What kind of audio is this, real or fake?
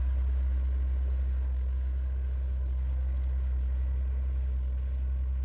real